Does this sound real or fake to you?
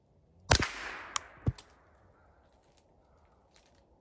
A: real